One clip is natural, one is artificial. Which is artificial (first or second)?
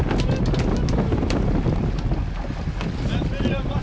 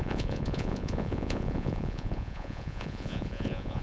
second